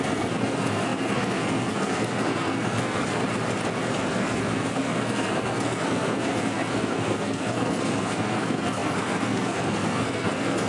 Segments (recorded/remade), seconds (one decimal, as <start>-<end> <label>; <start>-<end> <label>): 0.0-3.2 remade; 3.2-3.8 recorded; 3.8-10.7 remade

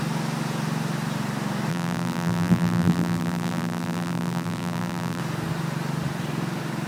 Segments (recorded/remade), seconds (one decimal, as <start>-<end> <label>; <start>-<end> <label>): 0.0-1.7 recorded; 1.7-5.2 remade; 5.2-6.9 recorded

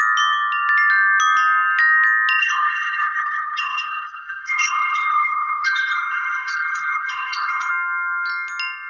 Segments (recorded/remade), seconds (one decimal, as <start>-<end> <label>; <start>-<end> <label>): 0.0-2.4 recorded; 2.4-7.7 remade; 7.7-8.9 recorded

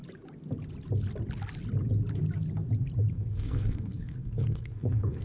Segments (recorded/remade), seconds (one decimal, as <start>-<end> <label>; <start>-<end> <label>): 0.0-3.1 recorded; 3.1-5.2 remade

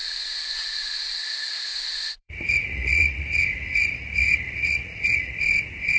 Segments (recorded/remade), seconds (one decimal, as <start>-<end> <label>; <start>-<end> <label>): 0.0-1.2 remade; 1.2-1.7 recorded; 1.7-5.3 remade; 5.3-6.0 recorded

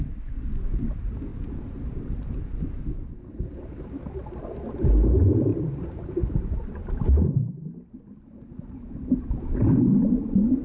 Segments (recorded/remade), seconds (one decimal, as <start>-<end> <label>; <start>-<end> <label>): 0.0-1.3 recorded; 1.3-4.5 remade; 4.5-5.5 recorded; 5.5-7.3 remade; 7.3-10.6 recorded

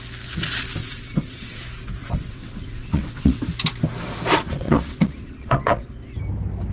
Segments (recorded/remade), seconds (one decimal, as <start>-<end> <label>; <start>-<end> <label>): 0.0-0.8 recorded; 0.8-1.6 remade; 1.6-2.0 recorded; 2.0-3.4 remade; 3.4-4.5 recorded; 4.5-5.9 remade; 5.9-6.7 recorded

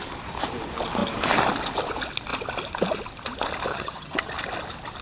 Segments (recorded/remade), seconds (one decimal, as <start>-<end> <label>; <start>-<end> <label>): 0.0-3.7 recorded; 3.7-4.3 remade; 4.3-5.0 recorded